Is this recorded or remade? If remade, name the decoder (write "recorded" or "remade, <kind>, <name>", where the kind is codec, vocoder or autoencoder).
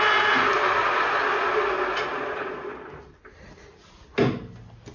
recorded